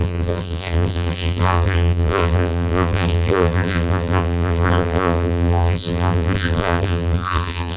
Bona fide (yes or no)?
no